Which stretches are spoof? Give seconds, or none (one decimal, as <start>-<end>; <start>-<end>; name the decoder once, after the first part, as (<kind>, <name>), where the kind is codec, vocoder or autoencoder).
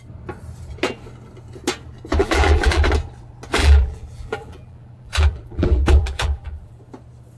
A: 2.2-2.8 (vocoder, BigVGAN v2); 3.6-6.8